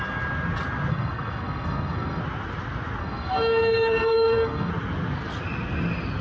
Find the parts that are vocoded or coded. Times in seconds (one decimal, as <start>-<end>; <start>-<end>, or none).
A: 0.9-2.2; 3.0-4.7